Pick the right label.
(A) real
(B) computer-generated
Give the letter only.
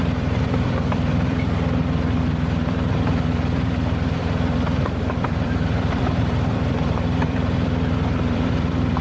B